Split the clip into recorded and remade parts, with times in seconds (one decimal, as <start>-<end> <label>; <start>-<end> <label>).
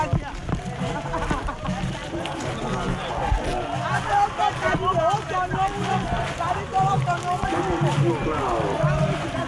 0.0-9.5 recorded